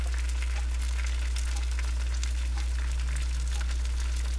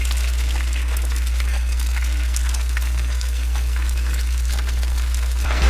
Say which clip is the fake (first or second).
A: second